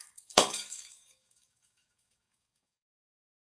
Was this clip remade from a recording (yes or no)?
yes